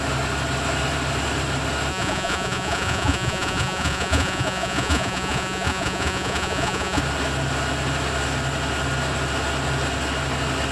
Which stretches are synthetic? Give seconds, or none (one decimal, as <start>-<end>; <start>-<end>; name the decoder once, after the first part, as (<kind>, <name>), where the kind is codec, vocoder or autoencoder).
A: 1.9-7.0 (vocoder, Vocos)

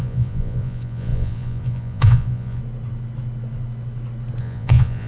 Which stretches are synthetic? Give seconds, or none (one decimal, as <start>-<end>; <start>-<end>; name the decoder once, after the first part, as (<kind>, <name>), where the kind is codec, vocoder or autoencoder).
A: 0.0-2.6 (vocoder, Vocos); 4.4-5.1

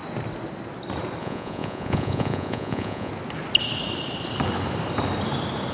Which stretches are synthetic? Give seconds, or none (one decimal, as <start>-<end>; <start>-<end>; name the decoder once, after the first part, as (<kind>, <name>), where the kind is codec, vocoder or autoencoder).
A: 1.2-3.1 (vocoder, Vocos)

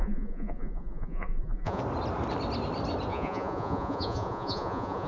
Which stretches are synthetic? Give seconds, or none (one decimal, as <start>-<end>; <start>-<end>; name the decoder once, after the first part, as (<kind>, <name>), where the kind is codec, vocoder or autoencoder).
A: 0.0-1.8 (vocoder, Vocos); 3.1-5.1